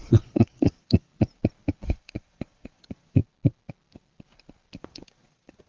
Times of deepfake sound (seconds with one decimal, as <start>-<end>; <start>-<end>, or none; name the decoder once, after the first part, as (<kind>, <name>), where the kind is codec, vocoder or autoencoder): 0.0-1.1 (vocoder, Vocos); 1.8-3.2; 4.8-5.7